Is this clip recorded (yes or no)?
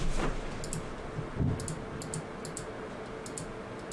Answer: yes